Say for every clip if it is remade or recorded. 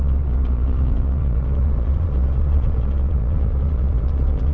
remade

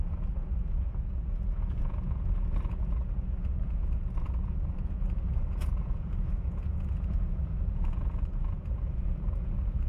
remade